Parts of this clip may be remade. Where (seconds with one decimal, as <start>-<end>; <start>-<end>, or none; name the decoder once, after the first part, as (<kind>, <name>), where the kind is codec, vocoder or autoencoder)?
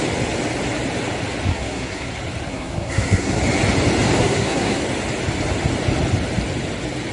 1.5-2.1 (codec, SNAC); 2.5-3.4; 4.2-4.8